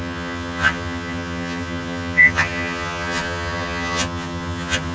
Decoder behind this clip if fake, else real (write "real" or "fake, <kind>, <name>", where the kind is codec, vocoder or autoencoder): fake, vocoder, HiFi-GAN